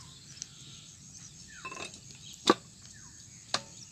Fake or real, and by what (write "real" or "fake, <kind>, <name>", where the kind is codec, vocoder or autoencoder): real